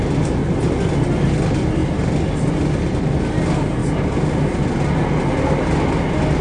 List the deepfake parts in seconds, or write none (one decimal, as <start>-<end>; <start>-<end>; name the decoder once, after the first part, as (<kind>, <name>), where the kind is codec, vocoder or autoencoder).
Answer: none